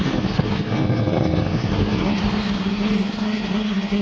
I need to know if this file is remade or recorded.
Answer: remade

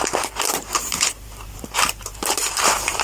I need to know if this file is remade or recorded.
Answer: remade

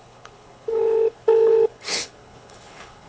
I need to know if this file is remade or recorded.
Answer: remade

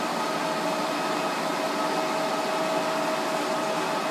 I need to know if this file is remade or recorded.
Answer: recorded